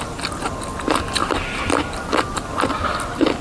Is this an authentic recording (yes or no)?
yes